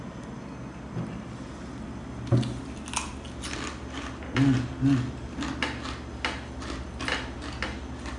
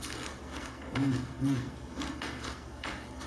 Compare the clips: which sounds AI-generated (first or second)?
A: second